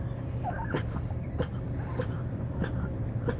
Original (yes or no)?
no